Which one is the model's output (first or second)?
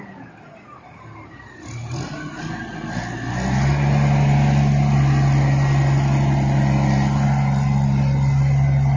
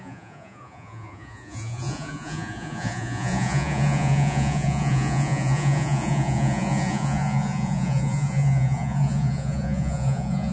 second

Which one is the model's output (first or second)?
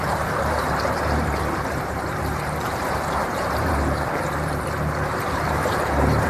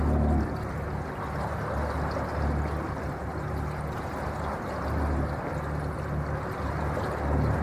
first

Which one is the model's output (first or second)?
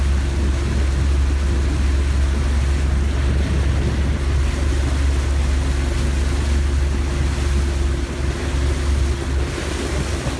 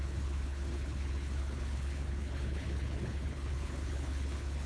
second